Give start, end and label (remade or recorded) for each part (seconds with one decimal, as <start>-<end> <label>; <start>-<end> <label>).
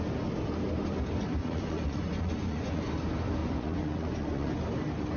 0.0-1.4 recorded; 1.4-2.8 remade; 2.8-3.4 recorded; 3.4-4.5 remade; 4.5-5.2 recorded